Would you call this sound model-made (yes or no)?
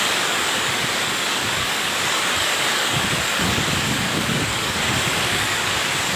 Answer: yes